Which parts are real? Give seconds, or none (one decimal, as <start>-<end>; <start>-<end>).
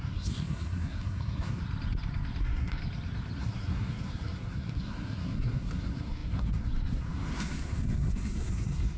1.6-2.4; 2.8-3.4